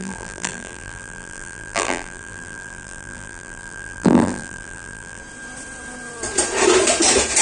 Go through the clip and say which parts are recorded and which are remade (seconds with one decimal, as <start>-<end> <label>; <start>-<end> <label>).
0.0-5.2 remade; 5.2-7.4 recorded